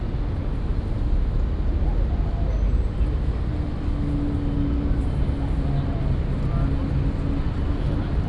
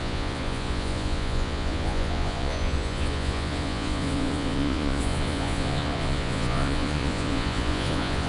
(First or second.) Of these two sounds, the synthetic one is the second